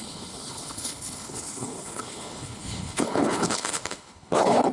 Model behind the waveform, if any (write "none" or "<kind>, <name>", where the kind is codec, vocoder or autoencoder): codec, HILCodec